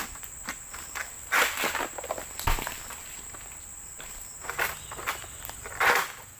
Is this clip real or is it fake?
real